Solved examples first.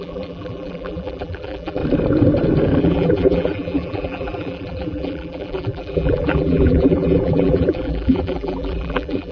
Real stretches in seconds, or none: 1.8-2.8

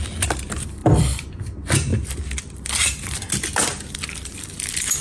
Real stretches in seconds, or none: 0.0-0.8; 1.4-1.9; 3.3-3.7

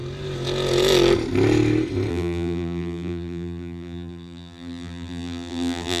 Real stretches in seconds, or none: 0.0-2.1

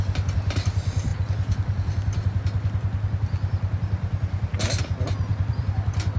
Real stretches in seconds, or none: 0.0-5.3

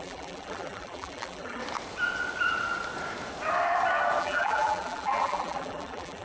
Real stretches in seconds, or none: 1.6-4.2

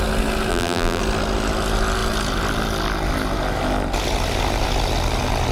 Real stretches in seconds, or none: 0.0-0.5; 1.0-5.5